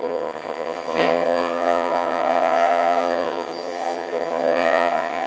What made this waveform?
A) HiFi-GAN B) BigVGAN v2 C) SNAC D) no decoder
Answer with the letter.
A